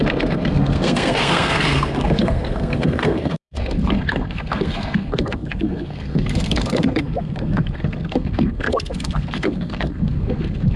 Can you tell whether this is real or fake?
fake